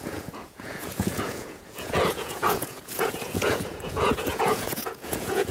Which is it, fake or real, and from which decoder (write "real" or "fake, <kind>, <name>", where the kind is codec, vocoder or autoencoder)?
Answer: fake, vocoder, Vocos